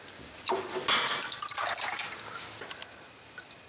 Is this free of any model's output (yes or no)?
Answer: yes